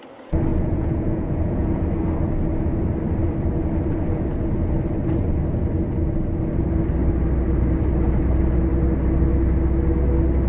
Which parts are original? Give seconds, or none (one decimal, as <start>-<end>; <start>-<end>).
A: 0.0-0.5; 1.8-10.5